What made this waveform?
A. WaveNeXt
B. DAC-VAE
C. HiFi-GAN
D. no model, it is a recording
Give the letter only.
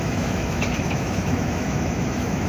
B